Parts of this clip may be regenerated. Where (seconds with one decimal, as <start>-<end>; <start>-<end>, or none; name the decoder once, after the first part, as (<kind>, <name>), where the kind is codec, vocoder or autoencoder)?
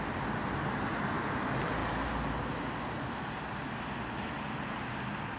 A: none